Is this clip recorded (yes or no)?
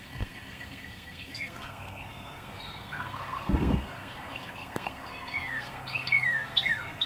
no